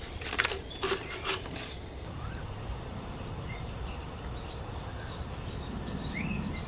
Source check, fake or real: real